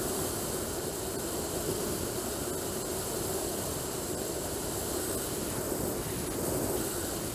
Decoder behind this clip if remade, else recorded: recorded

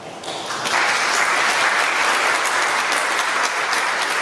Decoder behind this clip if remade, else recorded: recorded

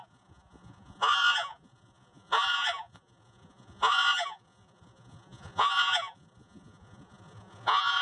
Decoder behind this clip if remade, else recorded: remade, vocoder, Vocos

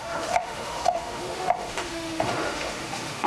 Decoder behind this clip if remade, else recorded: remade, autoencoder, DAC-VAE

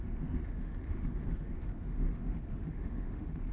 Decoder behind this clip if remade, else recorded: remade, autoencoder, DAC-VAE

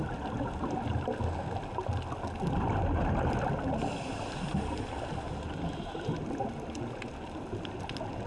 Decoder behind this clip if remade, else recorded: recorded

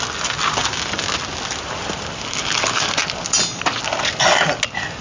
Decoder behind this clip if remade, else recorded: recorded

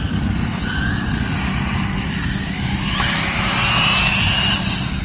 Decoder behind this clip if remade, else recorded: recorded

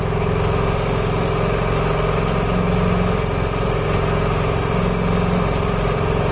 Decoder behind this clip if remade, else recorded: recorded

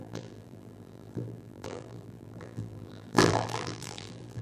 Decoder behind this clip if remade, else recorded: remade, vocoder, BigVGAN v2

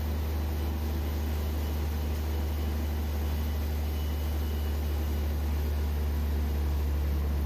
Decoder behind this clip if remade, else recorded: recorded